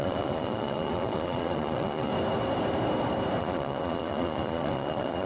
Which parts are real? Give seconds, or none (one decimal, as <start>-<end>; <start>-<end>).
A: 2.1-3.4